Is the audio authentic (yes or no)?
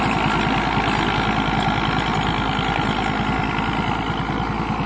yes